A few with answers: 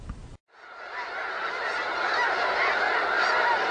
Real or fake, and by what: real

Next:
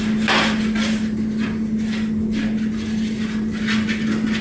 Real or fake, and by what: real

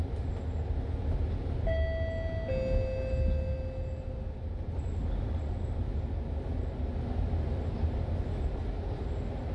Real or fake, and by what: real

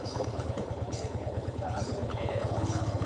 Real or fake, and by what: fake, codec, HILCodec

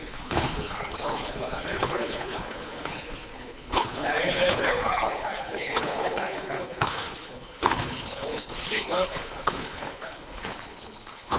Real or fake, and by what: fake, codec, HILCodec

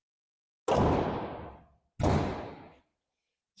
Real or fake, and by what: real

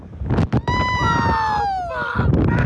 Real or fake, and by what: real